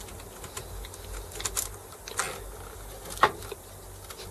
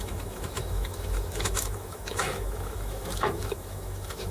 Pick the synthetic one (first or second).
second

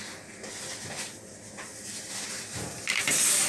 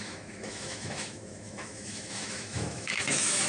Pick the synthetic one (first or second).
second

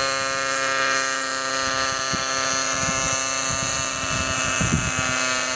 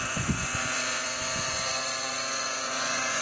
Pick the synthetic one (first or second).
second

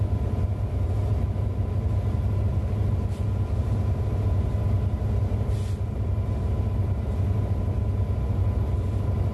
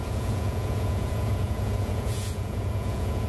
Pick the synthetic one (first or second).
second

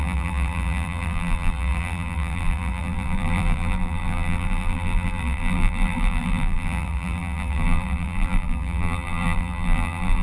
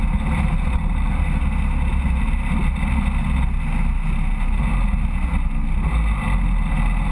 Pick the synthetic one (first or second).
first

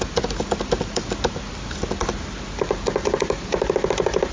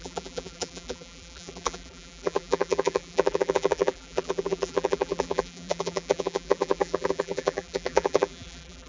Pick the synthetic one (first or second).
second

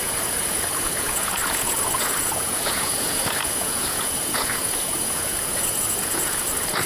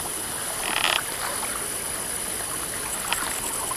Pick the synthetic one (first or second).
first